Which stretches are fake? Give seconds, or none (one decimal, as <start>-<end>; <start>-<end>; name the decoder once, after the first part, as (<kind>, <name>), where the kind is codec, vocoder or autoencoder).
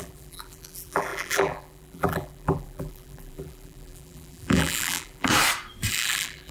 0.0-5.3 (vocoder, BigVGAN v2); 5.9-6.5